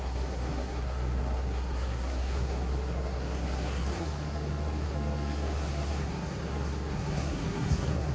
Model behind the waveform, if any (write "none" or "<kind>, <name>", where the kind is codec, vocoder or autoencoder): codec, SNAC